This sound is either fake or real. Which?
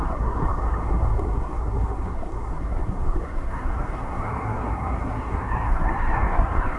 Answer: fake